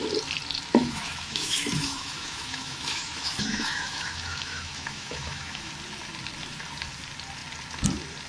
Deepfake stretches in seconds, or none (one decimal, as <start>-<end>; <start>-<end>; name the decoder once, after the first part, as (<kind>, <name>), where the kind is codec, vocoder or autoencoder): 0.8-5.7 (autoencoder, DAC-VAE)